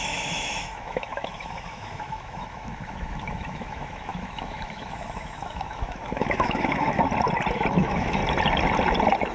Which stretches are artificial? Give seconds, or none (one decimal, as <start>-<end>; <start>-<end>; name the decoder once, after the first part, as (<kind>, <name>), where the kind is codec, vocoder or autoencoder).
0.0-7.0 (autoencoder, DAC-VAE); 7.7-8.2